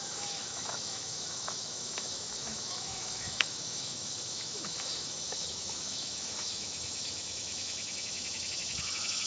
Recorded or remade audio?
remade